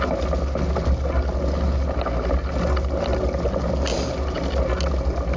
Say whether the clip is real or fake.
real